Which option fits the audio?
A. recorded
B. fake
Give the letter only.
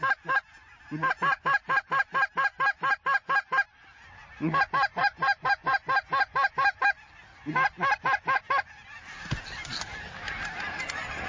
A